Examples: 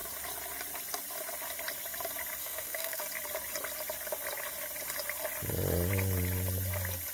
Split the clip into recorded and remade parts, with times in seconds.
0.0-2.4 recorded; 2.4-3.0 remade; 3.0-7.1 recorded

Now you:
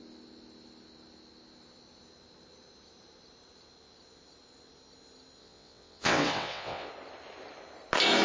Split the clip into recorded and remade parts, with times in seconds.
0.0-5.4 recorded; 5.4-6.9 remade; 6.9-8.2 recorded

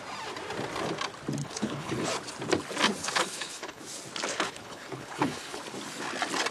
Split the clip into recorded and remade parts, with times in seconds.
0.0-1.4 recorded; 1.4-2.1 remade; 2.1-3.0 recorded; 3.0-3.8 remade; 3.8-4.3 recorded; 4.3-5.6 remade; 5.6-6.5 recorded

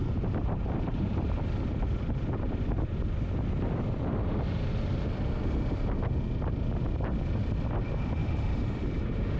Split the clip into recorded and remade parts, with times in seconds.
0.0-0.4 recorded; 0.4-1.1 remade; 1.1-8.2 recorded; 8.2-9.4 remade

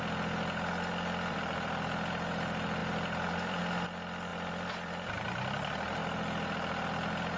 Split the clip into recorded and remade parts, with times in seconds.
0.0-2.8 recorded; 2.8-3.6 remade; 3.6-4.3 recorded; 4.3-5.2 remade; 5.2-7.4 recorded

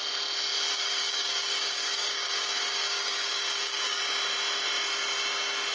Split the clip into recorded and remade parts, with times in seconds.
0.0-0.7 recorded; 0.7-4.0 remade; 4.0-5.7 recorded

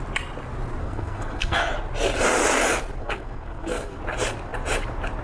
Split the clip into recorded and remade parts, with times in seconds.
0.0-0.8 recorded; 0.8-1.7 remade; 1.7-3.0 recorded; 3.0-4.0 remade; 4.0-5.2 recorded

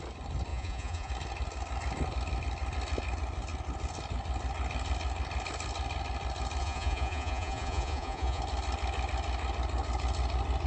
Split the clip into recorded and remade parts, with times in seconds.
0.0-0.5 recorded; 0.5-1.1 remade; 1.1-6.6 recorded; 6.6-8.4 remade; 8.4-10.7 recorded